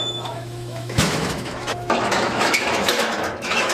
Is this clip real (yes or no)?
no